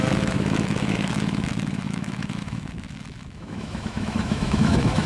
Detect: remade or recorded remade